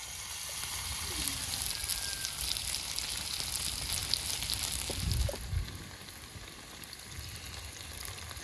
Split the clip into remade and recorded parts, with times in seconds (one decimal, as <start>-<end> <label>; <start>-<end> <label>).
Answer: 0.0-8.4 recorded